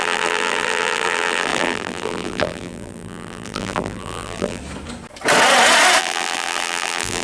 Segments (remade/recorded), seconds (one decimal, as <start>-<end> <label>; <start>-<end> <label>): 0.0-4.6 remade; 4.6-6.0 recorded; 6.0-7.2 remade